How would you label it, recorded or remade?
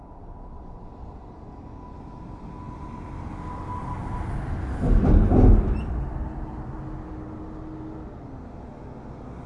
recorded